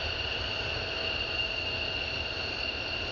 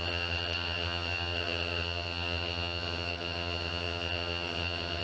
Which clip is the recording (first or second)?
first